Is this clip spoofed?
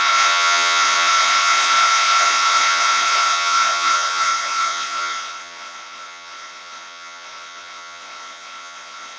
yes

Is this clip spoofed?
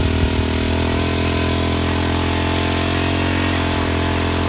no